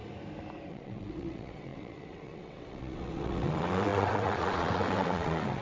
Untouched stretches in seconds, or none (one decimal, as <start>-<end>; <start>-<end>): 0.0-0.7